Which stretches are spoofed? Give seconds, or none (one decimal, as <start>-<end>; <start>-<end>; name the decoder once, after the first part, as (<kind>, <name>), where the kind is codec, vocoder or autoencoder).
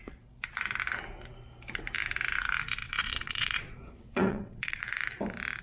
2.8-4.8 (vocoder, WaveNeXt)